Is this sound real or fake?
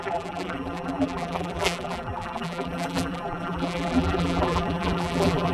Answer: fake